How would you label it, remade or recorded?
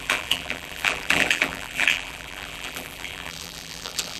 remade